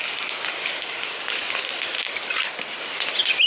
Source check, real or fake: real